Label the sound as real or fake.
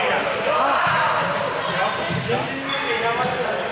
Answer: real